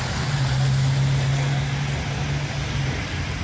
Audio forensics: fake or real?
real